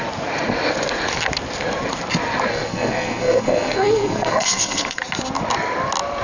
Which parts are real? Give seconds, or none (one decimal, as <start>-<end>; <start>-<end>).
0.0-2.5; 5.0-6.2